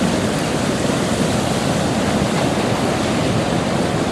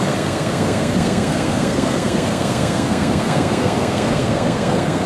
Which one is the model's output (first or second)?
second